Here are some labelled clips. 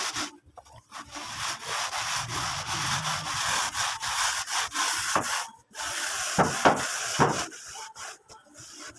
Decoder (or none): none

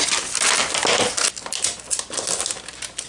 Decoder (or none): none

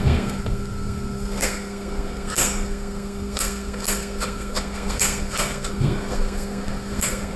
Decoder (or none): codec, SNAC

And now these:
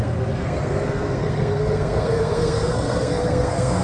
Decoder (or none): codec, SNAC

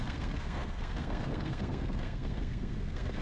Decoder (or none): codec, SNAC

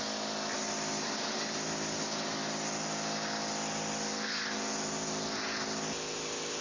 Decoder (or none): none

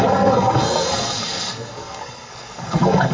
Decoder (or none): codec, SNAC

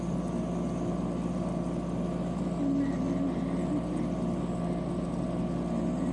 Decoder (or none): none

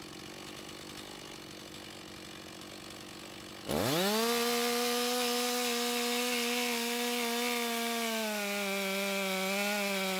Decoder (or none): none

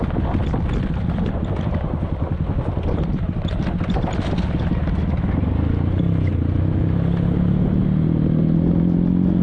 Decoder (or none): none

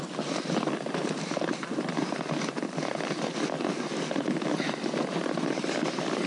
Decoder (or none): none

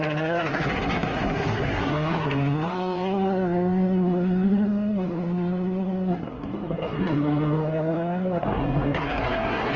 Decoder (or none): codec, SNAC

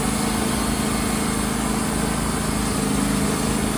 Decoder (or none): none